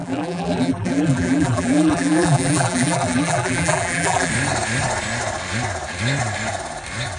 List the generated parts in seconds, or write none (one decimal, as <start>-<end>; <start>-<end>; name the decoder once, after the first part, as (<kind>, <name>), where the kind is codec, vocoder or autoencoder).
0.0-4.3 (vocoder, BigVGAN v2)